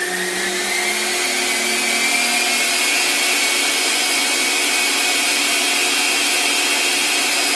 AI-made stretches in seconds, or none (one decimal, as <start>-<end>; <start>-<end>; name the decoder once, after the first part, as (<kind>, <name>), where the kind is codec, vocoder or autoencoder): 3.7-4.6 (vocoder, Vocos)